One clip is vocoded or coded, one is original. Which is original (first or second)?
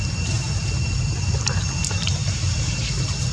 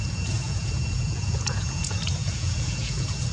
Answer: first